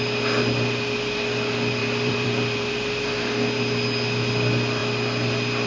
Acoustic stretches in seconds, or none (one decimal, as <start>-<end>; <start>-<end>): 0.0-1.8; 2.7-5.7